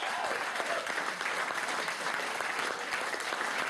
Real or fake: real